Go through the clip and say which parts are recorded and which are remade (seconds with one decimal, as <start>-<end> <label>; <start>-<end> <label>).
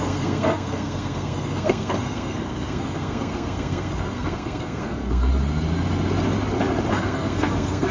0.0-5.3 remade; 5.3-6.9 recorded; 6.9-7.9 remade